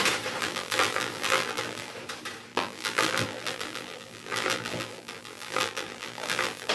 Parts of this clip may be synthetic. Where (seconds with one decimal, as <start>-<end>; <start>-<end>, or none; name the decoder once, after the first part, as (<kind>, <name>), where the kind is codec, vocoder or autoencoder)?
0.4-1.9 (vocoder, BigVGAN v2); 2.5-6.7